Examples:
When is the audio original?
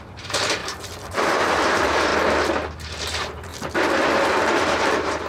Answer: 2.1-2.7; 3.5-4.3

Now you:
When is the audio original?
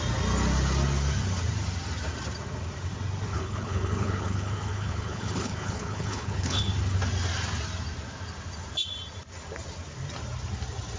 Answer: 0.0-3.3; 6.7-11.0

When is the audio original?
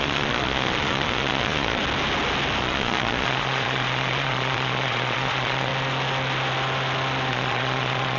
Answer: 1.8-2.6; 5.7-7.3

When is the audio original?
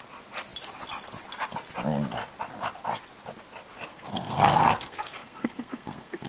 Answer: 0.0-3.9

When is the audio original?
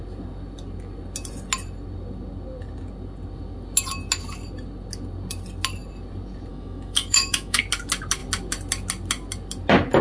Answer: 0.0-6.5; 7.6-10.0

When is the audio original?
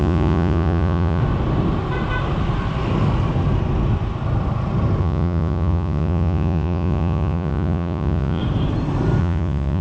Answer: 1.2-5.0; 8.4-9.2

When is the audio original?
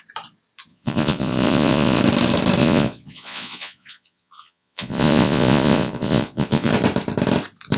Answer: 0.0-0.7; 2.0-2.6; 6.7-7.8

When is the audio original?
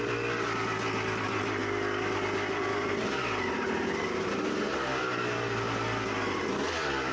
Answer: 0.0-7.1